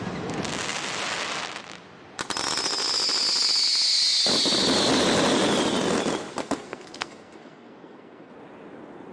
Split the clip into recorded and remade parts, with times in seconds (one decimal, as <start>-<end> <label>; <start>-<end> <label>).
0.0-6.3 recorded; 6.3-8.3 remade; 8.3-9.1 recorded

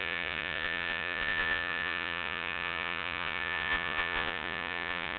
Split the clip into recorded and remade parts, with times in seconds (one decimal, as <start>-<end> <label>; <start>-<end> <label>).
0.0-5.2 remade